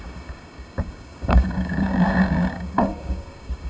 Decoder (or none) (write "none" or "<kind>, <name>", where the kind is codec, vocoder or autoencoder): codec, DAC